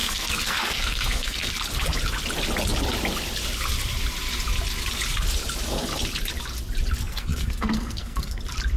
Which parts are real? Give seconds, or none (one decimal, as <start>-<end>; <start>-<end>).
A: 1.5-7.0; 8.4-8.8

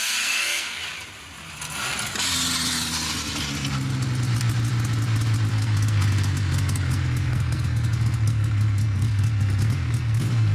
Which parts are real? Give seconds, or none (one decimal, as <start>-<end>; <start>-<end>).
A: 0.8-5.5

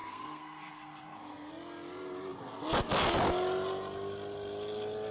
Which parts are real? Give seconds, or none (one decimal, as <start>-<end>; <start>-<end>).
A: 1.5-5.1

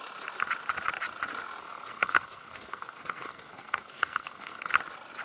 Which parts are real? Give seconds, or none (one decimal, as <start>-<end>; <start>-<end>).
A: 0.0-1.6; 4.7-5.2

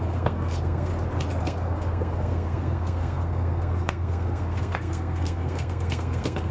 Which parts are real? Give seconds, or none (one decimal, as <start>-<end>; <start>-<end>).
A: 0.9-1.4

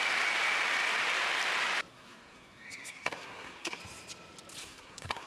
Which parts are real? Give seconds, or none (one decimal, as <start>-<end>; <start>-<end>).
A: 0.0-1.9; 3.8-4.6

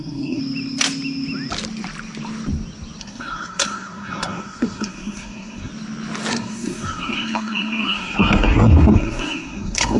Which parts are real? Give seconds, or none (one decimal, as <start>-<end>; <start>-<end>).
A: 0.4-3.0; 5.7-6.3

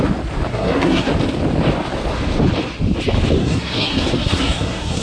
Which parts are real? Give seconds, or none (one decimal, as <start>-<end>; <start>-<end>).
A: 0.0-0.5; 1.1-3.4